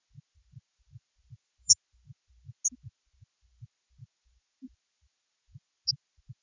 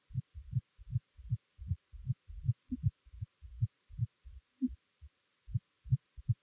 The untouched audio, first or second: first